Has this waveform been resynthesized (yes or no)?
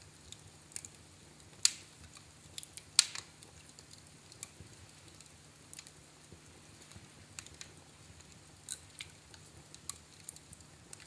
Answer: no